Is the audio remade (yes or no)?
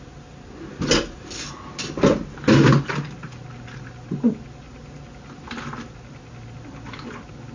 no